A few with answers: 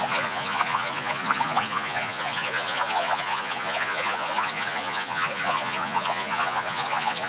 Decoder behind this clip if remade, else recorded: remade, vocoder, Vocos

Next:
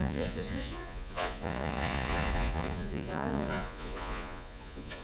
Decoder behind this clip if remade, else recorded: remade, vocoder, Vocos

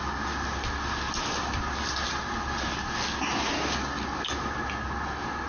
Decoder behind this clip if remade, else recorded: recorded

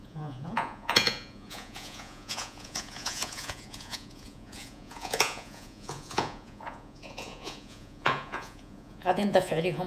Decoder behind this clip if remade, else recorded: remade, vocoder, Vocos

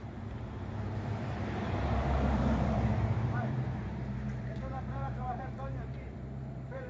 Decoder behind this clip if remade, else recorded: remade, vocoder, BigVGAN v2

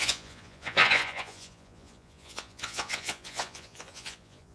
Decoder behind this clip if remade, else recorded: remade, vocoder, Vocos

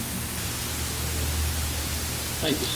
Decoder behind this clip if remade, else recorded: recorded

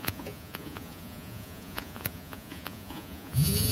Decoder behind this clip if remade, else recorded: remade, vocoder, Vocos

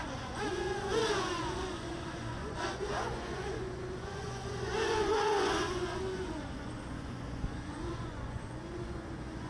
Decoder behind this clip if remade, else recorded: remade, vocoder, Vocos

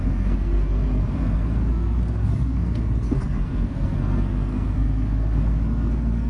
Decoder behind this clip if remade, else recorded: remade, codec, SNAC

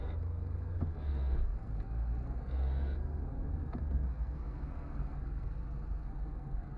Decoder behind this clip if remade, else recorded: remade, codec, SNAC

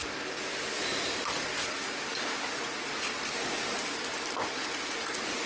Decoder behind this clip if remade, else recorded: recorded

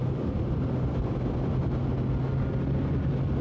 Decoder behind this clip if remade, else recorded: recorded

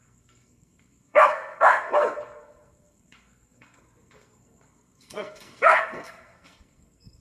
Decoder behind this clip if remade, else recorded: remade, codec, SNAC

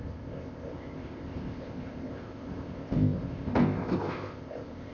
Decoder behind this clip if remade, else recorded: remade, codec, ZipCodec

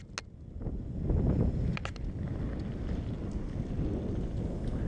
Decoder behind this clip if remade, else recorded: recorded